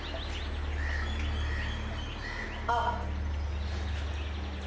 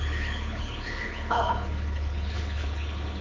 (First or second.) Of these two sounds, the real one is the first